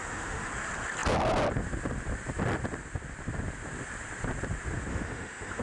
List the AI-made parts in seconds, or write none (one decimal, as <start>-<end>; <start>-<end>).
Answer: 0.0-0.5; 4.9-5.6